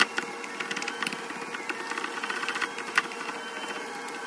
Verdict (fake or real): real